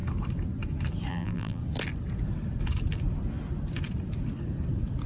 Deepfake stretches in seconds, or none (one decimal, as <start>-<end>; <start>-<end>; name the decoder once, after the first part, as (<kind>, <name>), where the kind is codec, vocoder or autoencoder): 1.1-1.6 (vocoder, BigVGAN v2)